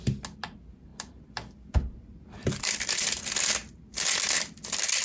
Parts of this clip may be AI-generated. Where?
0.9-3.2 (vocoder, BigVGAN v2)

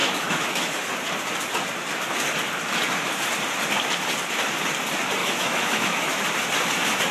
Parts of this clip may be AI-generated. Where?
0.0-0.9 (autoencoder, DAC-VAE); 5.2-6.2